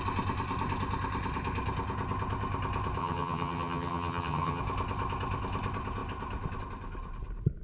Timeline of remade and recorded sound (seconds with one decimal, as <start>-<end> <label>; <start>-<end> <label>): 0.0-3.0 recorded; 3.0-4.6 remade; 4.6-7.6 recorded